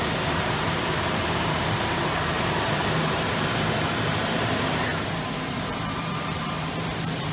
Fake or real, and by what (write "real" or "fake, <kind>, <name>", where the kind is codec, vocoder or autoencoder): fake, vocoder, BigVGAN v2